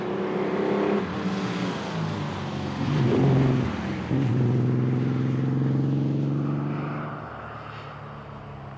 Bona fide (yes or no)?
yes